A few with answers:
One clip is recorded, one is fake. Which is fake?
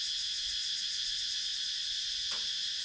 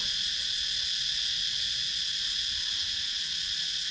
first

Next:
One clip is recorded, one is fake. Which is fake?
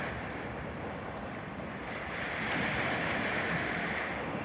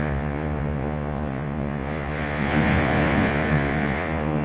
second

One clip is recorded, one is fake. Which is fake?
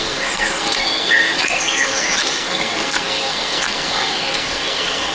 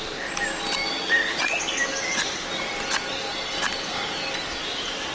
first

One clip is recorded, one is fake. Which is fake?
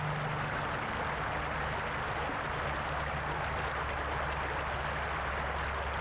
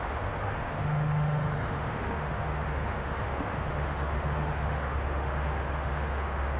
second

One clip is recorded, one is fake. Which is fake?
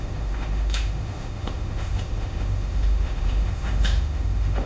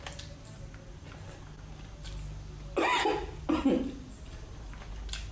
first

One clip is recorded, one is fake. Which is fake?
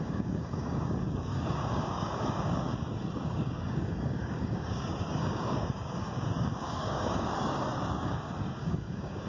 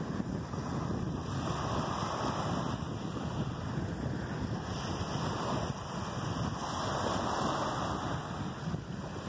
first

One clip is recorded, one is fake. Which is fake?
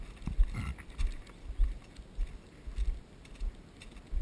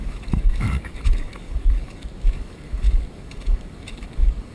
second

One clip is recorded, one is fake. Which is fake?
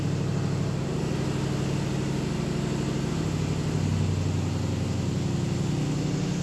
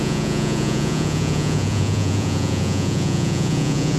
second